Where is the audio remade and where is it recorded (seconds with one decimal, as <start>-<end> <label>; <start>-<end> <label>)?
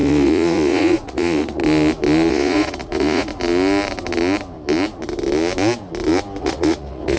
0.0-1.6 remade; 1.6-2.3 recorded; 2.3-3.3 remade; 3.3-6.4 recorded; 6.4-7.2 remade